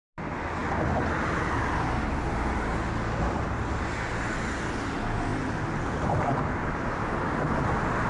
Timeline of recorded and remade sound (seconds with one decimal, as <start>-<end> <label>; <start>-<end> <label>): 0.0-8.1 recorded